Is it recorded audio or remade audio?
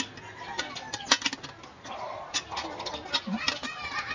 recorded